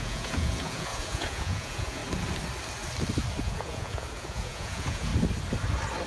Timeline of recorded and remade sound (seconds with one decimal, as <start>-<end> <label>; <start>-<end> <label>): 0.0-2.0 remade; 2.0-3.4 recorded; 3.4-5.1 remade; 5.1-6.1 recorded